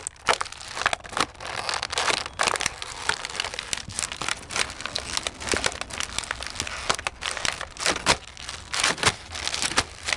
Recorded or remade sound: recorded